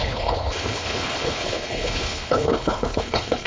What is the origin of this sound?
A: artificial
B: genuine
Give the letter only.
A